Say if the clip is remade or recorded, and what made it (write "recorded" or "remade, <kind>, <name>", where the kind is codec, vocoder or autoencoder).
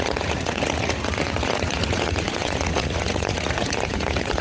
remade, vocoder, Vocos